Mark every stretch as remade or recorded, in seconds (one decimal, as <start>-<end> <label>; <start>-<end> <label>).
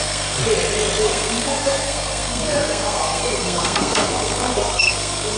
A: 0.0-0.4 remade; 0.4-1.0 recorded; 1.0-5.4 remade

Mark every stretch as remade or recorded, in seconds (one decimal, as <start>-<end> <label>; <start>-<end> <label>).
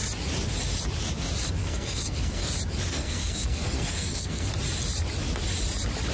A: 0.0-1.6 recorded; 1.6-2.5 remade; 2.5-2.9 recorded; 2.9-4.5 remade; 4.5-6.1 recorded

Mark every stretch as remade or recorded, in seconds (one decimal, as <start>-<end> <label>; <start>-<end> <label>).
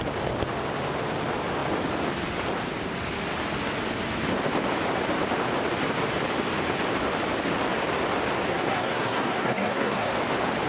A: 0.0-8.5 recorded; 8.5-10.1 remade; 10.1-10.7 recorded